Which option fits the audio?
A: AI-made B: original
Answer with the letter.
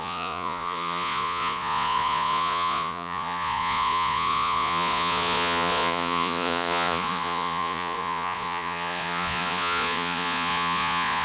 A